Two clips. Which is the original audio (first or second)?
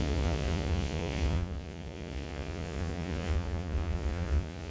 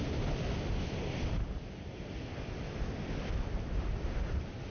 second